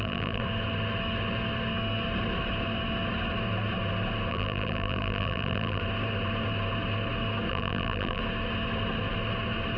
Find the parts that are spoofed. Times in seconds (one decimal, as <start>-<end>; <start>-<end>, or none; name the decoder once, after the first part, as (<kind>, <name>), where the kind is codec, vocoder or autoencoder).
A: 0.0-0.4 (vocoder, BigVGAN v2); 4.3-5.8; 7.5-8.2